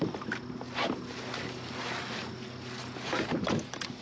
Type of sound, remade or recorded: recorded